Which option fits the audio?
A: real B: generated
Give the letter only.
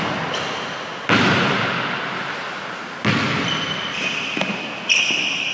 A